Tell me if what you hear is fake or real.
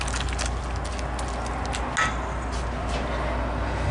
real